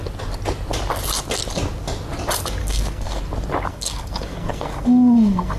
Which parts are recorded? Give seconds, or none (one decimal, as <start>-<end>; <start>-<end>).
0.0-2.6; 3.2-3.7

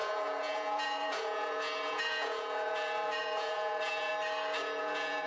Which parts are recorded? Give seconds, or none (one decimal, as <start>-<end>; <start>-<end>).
4.1-4.8

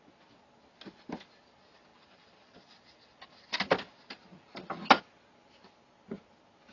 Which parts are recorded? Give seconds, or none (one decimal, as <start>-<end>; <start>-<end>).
0.0-1.9; 3.9-6.7

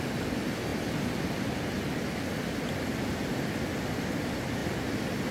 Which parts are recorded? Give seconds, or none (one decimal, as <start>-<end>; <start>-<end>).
0.0-5.3

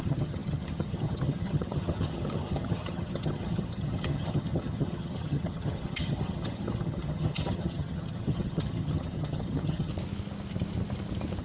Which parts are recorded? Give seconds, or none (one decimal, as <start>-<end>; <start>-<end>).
9.9-11.4

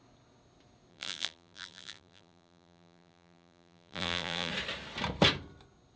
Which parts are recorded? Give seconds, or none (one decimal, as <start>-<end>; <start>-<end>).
0.0-0.9; 4.5-6.0

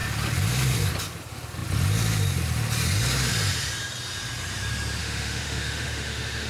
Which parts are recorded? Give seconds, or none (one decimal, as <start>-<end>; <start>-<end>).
0.0-5.0

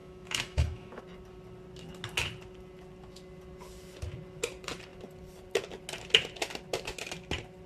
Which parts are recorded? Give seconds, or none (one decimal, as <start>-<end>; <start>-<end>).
1.0-7.7